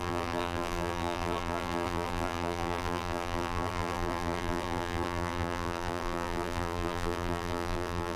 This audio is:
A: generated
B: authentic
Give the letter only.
A